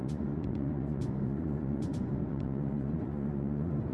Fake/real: fake